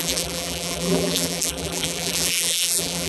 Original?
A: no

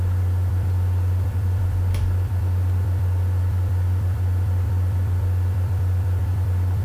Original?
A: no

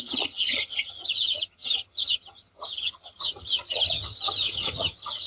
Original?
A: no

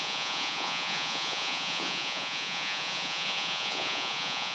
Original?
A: no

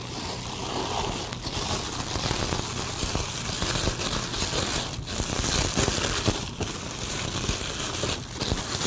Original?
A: yes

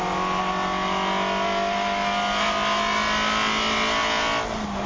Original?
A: yes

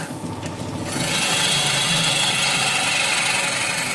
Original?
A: yes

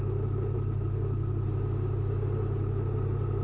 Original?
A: yes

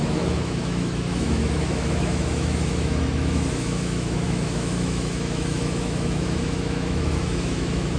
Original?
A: no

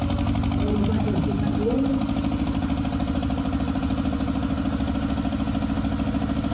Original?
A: yes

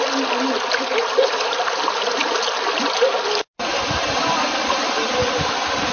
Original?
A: yes